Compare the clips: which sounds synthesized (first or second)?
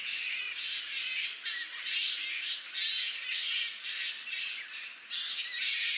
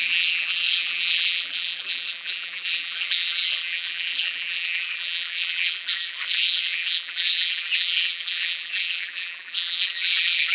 second